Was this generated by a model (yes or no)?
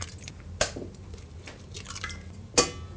no